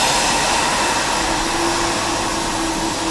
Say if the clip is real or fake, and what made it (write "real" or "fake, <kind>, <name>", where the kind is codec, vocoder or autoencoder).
real